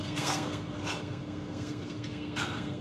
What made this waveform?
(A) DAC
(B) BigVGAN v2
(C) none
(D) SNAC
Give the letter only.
D